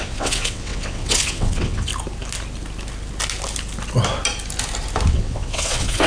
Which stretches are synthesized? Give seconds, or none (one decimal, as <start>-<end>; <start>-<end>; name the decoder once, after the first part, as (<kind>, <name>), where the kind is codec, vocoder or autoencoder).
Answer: 0.0-1.9 (vocoder, WaveNeXt); 5.1-6.1